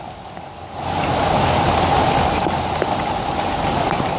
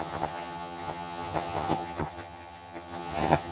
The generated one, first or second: second